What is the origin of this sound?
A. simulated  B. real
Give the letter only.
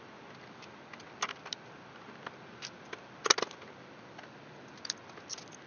B